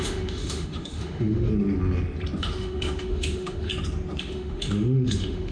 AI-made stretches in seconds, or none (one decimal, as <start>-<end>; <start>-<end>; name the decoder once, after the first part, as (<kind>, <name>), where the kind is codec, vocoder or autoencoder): 0.0-1.5 (autoencoder, DAC-VAE); 2.4-3.7; 4.2-5.5